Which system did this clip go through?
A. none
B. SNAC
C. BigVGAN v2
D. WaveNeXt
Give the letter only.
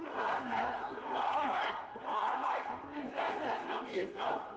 B